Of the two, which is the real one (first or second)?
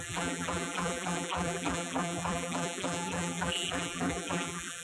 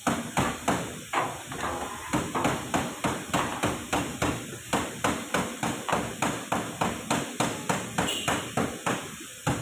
second